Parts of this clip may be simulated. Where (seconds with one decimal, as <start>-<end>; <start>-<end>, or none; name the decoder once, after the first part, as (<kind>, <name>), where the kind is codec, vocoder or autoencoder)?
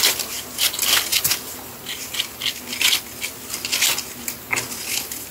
none